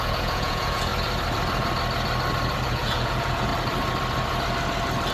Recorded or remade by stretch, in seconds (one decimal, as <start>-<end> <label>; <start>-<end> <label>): 0.0-0.9 remade; 0.9-2.7 recorded; 2.7-3.5 remade; 3.5-5.1 recorded